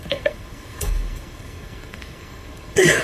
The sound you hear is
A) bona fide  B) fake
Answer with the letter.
B